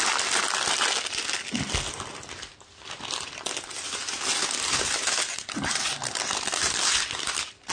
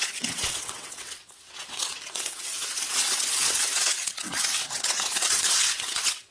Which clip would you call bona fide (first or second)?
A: first